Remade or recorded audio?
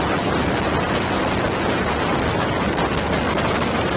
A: recorded